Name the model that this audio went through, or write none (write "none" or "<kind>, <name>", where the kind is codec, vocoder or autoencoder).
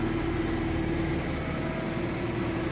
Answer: none